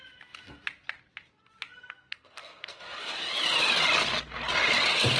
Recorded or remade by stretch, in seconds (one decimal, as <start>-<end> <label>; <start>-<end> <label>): 0.0-1.8 recorded; 1.8-2.8 remade; 2.8-5.2 recorded